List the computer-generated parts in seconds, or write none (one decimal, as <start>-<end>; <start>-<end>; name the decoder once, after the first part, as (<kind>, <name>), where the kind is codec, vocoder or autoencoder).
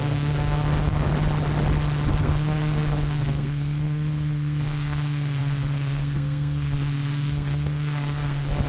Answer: 0.0-1.1 (codec, SNAC); 2.2-8.7